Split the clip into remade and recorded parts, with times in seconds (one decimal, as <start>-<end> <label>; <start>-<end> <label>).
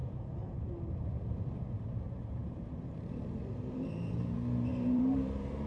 0.0-5.7 remade